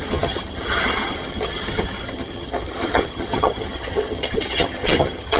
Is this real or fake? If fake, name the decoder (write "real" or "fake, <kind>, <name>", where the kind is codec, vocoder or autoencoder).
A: fake, vocoder, HiFi-GAN